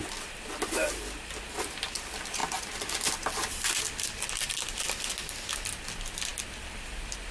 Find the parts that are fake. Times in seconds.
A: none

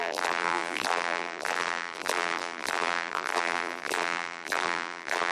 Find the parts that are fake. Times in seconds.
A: 0.0-5.3 (vocoder, BigVGAN v2)

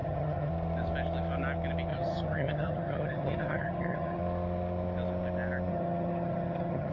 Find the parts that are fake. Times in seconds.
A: 0.0-0.5 (vocoder, HiFi-GAN); 1.9-4.2; 5.7-6.9

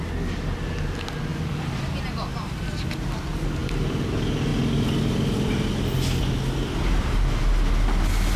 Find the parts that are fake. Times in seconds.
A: none

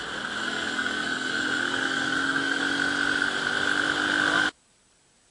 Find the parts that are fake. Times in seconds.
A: 0.4-2.6 (codec, SNAC)